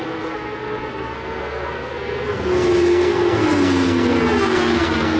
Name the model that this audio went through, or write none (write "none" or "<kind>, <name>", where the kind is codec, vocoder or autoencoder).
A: codec, SNAC